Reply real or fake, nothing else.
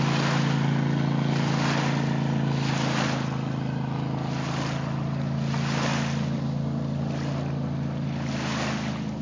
real